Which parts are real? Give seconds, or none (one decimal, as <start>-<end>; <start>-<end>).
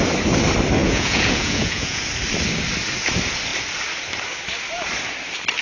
0.0-0.8; 2.0-5.6